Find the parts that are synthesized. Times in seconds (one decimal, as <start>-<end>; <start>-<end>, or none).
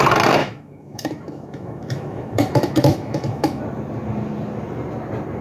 0.4-3.6